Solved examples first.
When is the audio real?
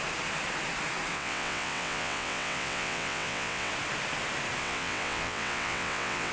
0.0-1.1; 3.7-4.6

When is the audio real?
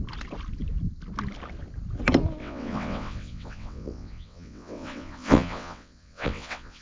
0.0-2.4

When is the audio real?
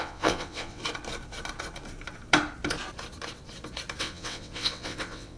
0.8-4.0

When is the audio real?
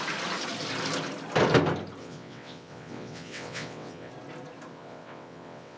0.0-2.0; 4.1-4.7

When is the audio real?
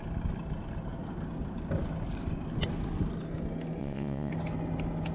0.0-3.8; 4.3-5.1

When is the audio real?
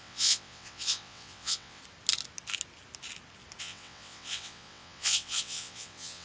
1.8-3.6